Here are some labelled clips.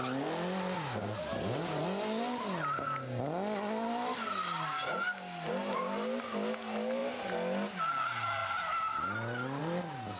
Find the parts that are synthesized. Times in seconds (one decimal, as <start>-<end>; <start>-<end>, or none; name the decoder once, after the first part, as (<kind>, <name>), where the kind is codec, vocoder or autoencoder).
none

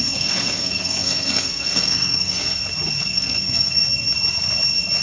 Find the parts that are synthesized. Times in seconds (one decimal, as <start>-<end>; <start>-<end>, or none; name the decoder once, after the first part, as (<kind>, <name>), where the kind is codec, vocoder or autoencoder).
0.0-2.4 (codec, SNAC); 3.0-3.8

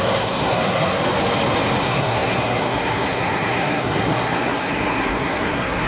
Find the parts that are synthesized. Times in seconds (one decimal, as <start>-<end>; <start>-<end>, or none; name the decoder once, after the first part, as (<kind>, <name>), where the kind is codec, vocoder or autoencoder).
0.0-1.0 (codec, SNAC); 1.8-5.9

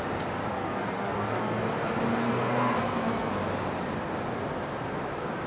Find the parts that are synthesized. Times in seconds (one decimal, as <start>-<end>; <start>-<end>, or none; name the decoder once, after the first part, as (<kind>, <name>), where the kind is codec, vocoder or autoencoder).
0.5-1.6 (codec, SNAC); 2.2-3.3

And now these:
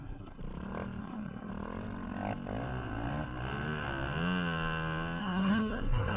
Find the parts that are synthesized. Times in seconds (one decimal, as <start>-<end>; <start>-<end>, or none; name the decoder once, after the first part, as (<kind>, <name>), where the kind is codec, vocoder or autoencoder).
0.0-0.4 (codec, SNAC); 1.0-1.5; 5.2-6.2